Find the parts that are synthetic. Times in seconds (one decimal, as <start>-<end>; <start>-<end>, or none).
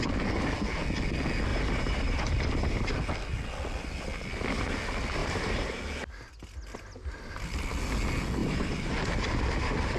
1.5-2.9; 5.2-5.8; 8.4-8.9